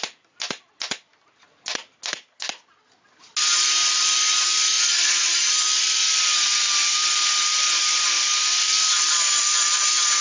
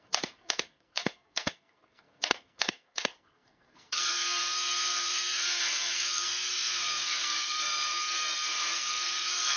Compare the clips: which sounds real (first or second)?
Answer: first